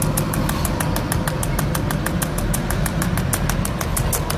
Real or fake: real